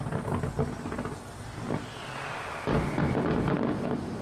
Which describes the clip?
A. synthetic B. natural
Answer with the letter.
B